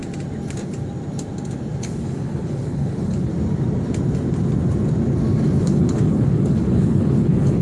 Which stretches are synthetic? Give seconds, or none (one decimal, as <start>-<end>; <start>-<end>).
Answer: 1.8-3.3; 5.6-7.6